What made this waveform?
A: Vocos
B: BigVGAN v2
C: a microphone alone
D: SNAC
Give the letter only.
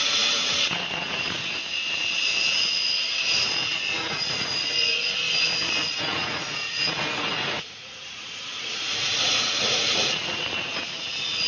A